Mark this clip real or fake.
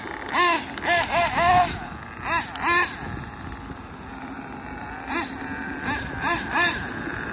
real